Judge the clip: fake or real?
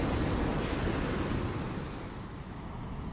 real